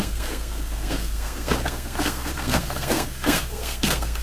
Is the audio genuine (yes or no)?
no